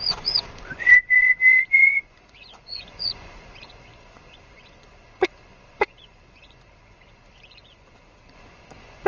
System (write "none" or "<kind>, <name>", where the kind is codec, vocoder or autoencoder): vocoder, Vocos